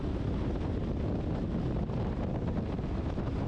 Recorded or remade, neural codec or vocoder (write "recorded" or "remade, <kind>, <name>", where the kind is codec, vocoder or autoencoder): recorded